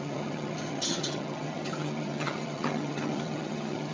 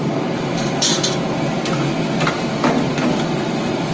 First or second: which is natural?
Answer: second